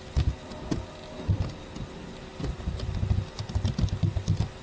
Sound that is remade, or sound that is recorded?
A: recorded